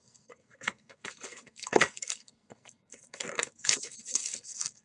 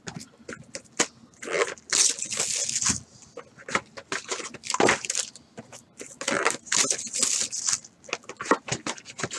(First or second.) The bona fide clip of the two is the second